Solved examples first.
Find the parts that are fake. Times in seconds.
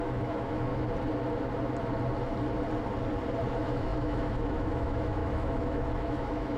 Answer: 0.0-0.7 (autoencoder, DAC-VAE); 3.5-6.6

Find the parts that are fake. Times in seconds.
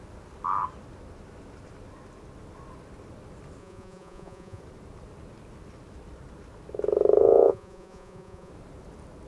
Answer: 3.6-4.6 (vocoder, Vocos); 7.2-8.5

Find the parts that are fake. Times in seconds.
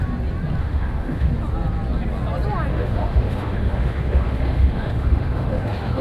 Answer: 0.6-1.3 (autoencoder, DAC-VAE); 2.7-6.0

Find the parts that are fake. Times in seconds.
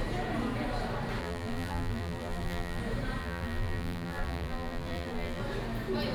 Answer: 1.2-2.8 (vocoder, BigVGAN v2); 3.2-5.4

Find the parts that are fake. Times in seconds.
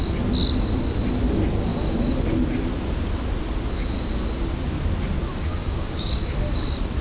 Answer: 5.3-6.3 (codec, DAC)